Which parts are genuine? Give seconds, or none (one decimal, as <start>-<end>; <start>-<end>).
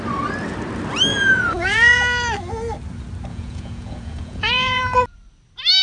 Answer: 0.0-1.1; 2.0-3.3; 4.8-5.8